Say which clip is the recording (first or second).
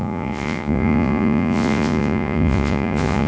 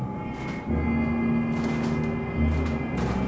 second